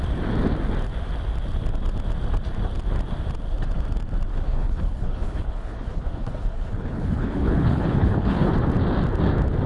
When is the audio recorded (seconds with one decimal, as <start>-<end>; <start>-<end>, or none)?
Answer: 0.0-4.3; 8.5-9.7